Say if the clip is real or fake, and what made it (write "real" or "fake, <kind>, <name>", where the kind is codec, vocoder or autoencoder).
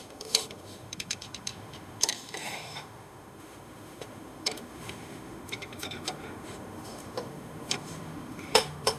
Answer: fake, autoencoder, DAC-VAE